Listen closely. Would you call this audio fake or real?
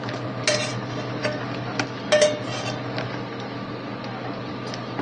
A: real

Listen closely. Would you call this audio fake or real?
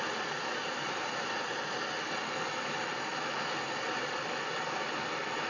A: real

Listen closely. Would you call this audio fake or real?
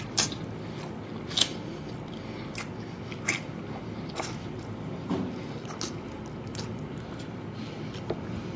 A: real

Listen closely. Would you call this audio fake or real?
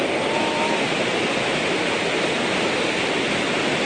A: real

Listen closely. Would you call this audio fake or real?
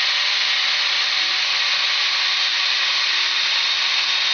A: real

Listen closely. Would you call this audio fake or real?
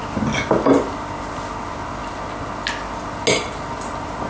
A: real